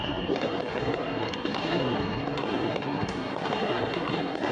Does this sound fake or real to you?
fake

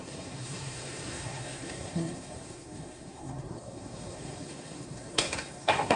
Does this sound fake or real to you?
fake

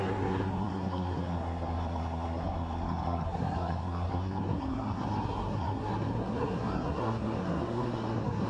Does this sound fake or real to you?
fake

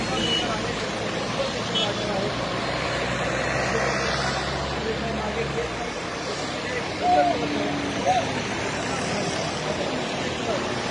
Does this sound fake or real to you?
real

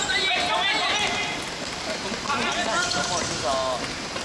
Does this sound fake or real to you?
real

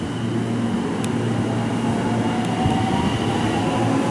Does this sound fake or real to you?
real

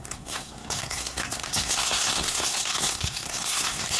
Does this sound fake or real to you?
fake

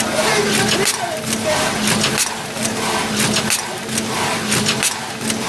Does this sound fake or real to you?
real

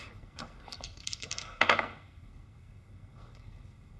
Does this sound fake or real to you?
fake